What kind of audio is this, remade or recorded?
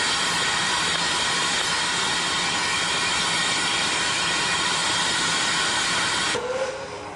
recorded